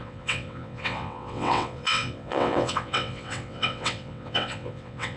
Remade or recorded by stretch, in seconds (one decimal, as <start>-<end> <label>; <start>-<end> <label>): 0.0-5.2 remade